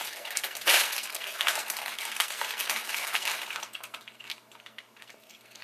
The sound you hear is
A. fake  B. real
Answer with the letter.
A